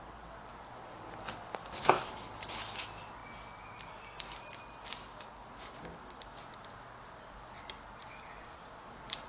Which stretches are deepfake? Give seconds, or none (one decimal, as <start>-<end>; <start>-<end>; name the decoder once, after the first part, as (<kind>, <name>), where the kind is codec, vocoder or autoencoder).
0.0-0.5 (vocoder, BigVGAN v2); 1.9-3.2; 8.2-9.3